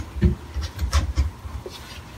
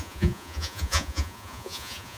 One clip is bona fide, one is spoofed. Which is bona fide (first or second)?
first